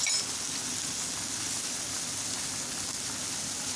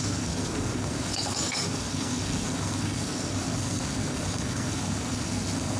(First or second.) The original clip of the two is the first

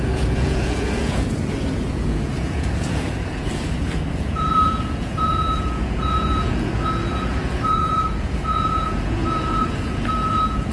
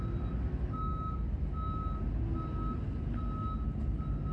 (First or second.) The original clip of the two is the second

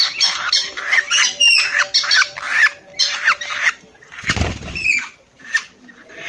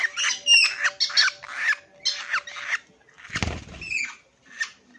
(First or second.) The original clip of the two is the second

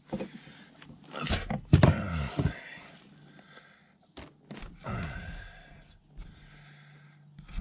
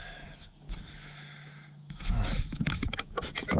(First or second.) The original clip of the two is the first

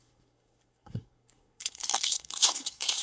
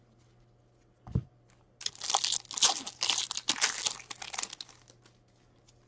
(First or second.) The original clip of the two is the second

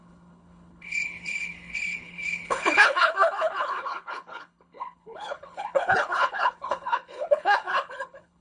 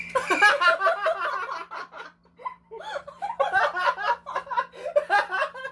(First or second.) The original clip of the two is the second